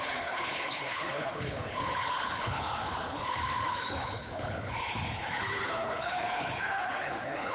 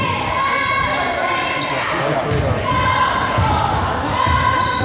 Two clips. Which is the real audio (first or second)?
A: second